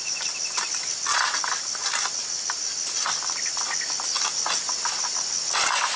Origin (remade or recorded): recorded